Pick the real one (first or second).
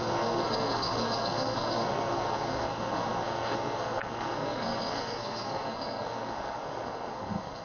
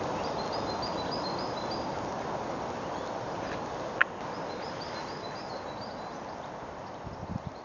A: second